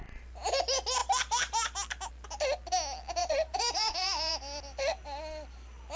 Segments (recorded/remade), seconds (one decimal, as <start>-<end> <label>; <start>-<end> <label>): 0.0-3.2 recorded; 3.2-4.3 remade; 4.3-6.0 recorded